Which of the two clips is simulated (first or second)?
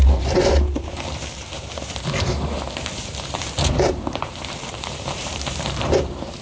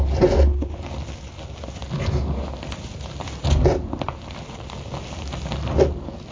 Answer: first